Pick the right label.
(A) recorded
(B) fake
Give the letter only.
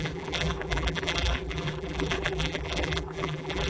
B